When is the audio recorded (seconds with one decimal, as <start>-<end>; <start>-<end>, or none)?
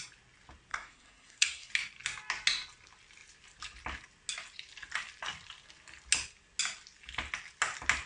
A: 0.0-0.7; 1.7-8.1